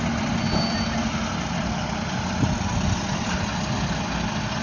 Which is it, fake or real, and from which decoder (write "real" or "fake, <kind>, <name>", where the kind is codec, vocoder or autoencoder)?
real